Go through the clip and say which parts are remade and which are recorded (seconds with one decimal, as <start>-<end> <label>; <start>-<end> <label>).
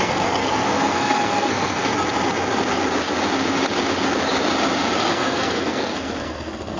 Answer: 0.0-1.9 remade; 1.9-5.1 recorded; 5.1-6.8 remade